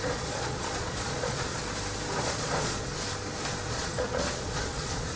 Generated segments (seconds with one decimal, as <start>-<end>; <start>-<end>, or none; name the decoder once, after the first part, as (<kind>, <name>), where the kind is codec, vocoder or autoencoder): 0.0-1.6 (vocoder, Vocos); 2.2-2.9; 3.7-5.2